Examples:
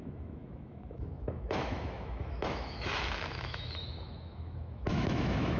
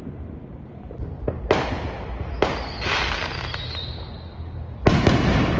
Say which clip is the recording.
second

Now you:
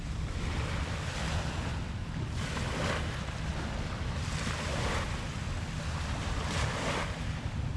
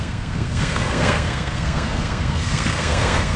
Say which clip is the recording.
first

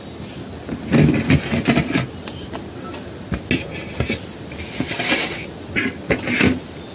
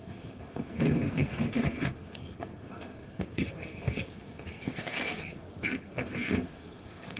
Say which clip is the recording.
first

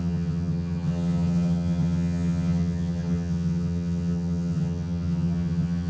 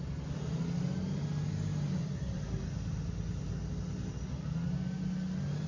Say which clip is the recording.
second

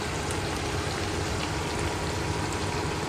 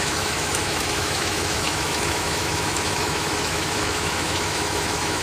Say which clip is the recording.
first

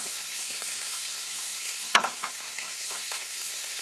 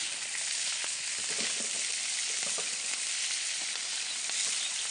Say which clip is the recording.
second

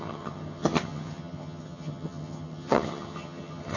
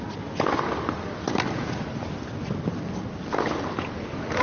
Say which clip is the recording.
second